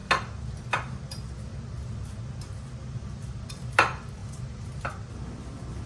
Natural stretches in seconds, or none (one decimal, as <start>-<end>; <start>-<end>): 0.0-4.2; 4.8-5.9